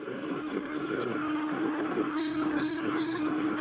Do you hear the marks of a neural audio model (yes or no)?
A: yes